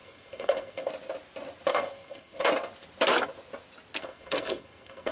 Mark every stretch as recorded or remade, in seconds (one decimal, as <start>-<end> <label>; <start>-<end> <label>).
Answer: 0.0-0.9 remade; 0.9-1.7 recorded; 1.7-2.5 remade; 2.5-4.0 recorded; 4.0-5.1 remade